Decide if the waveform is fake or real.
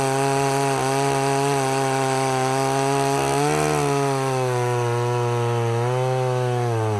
real